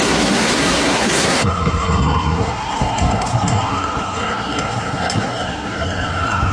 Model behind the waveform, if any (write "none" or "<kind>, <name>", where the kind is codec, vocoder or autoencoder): codec, SNAC